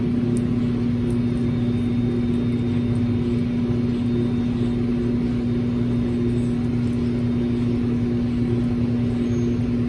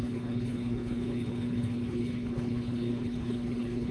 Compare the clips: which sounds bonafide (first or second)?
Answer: first